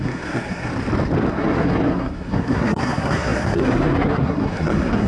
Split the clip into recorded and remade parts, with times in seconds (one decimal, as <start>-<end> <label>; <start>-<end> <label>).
0.0-0.7 remade; 0.7-1.3 recorded; 1.3-5.1 remade